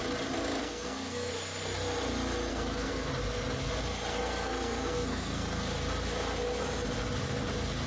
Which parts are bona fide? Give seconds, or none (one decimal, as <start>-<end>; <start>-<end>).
0.0-0.6; 1.3-2.5; 3.1-4.1; 5.6-7.9